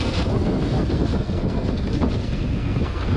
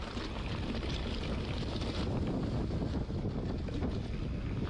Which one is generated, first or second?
first